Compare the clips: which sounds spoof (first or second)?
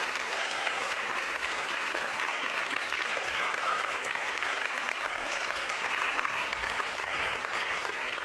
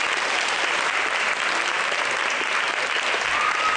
first